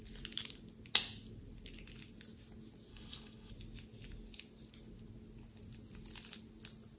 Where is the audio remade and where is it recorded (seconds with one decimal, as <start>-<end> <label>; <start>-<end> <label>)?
0.0-2.9 recorded; 2.9-3.5 remade; 3.5-7.0 recorded